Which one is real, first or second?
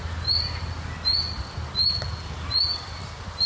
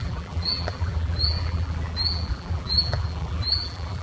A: first